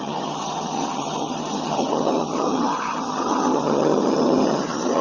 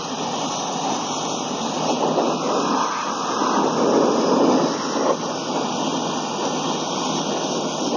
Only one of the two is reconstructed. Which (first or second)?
first